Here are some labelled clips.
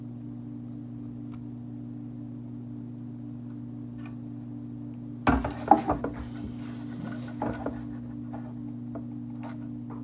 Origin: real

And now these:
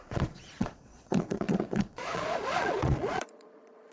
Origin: fake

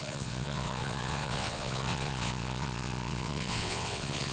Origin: fake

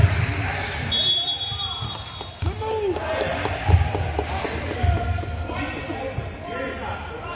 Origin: real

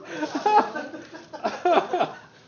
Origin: real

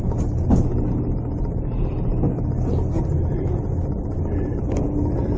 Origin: real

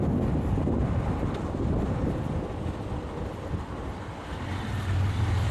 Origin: real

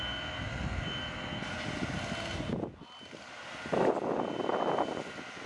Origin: real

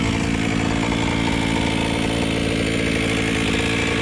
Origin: real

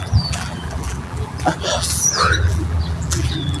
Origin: fake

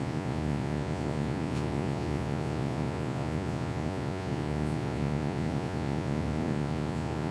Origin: fake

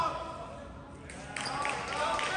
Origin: real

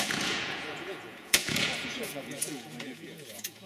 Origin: fake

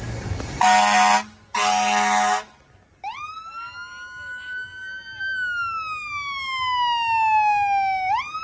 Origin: real